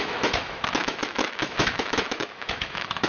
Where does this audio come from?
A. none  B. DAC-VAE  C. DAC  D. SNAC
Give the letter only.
B